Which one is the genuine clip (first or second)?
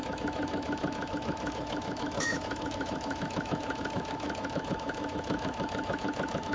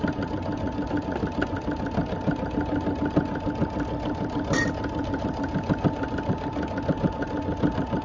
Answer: second